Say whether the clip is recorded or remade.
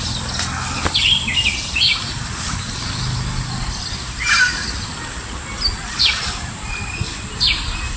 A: recorded